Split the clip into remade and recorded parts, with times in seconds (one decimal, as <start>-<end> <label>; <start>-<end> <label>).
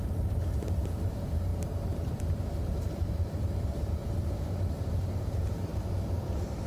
0.0-5.7 remade; 5.7-6.7 recorded